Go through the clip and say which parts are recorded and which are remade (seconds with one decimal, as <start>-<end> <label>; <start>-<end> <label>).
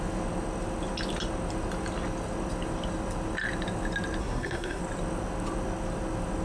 0.0-4.2 recorded; 4.2-4.8 remade; 4.8-6.4 recorded